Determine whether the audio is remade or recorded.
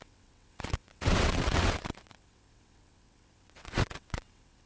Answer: remade